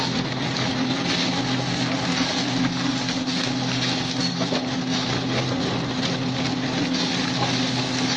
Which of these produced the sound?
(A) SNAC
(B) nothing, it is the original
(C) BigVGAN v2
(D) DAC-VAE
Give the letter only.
B